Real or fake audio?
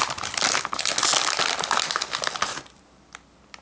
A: real